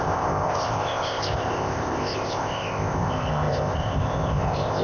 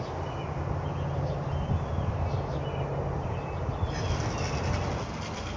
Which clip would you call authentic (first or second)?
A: second